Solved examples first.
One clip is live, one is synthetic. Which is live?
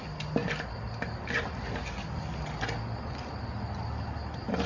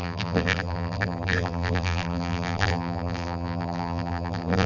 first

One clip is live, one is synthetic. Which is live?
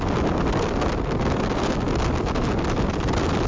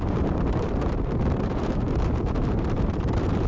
first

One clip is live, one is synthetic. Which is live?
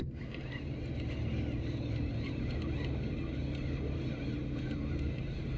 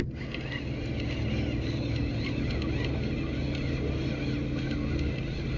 second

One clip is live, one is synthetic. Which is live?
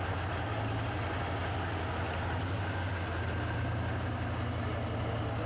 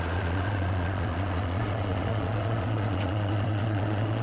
first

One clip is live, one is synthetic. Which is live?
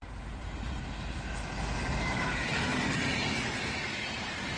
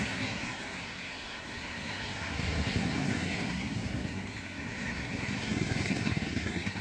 first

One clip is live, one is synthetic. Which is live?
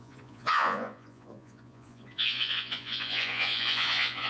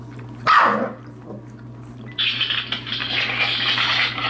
second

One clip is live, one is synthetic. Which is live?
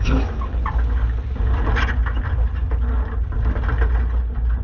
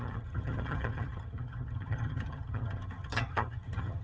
first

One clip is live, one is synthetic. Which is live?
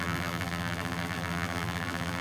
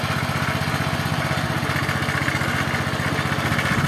second